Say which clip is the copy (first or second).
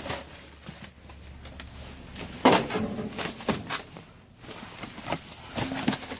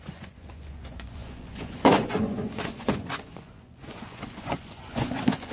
second